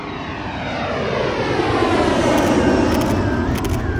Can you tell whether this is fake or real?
real